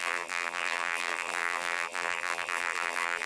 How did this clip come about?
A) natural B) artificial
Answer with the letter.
B